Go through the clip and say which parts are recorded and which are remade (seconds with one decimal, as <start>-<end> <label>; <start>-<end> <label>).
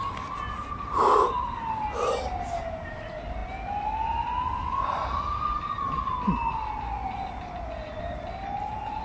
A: 0.0-9.0 recorded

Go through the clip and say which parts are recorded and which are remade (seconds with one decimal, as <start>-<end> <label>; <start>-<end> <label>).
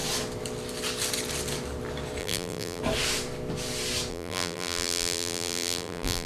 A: 0.0-2.2 recorded; 2.2-2.8 remade; 2.8-4.1 recorded; 4.1-6.3 remade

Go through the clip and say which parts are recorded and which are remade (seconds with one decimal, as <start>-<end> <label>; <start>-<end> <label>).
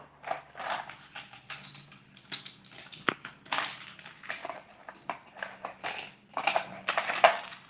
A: 0.0-4.4 recorded; 4.4-6.3 remade; 6.3-7.7 recorded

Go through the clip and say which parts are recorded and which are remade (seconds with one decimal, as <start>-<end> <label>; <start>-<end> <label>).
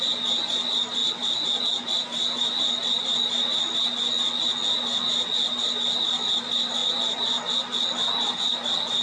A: 0.0-9.0 recorded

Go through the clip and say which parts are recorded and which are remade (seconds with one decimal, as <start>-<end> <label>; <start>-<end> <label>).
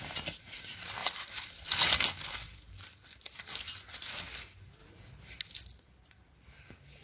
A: 0.0-1.0 recorded; 1.0-1.5 remade; 1.5-2.5 recorded; 2.5-3.4 remade; 3.4-4.8 recorded; 4.8-5.4 remade; 5.4-7.0 recorded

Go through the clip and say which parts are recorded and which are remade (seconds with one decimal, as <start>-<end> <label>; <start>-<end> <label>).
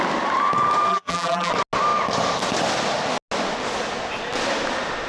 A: 0.0-0.9 recorded; 0.9-1.5 remade; 1.5-5.1 recorded